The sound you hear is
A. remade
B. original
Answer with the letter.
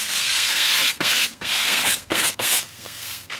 A